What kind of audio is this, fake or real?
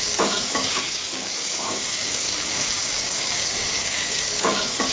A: fake